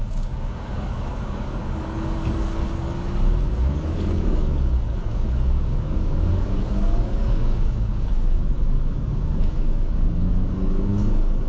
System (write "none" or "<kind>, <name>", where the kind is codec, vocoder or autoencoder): codec, DAC